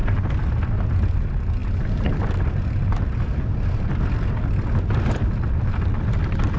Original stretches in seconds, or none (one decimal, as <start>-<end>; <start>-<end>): 0.0-1.1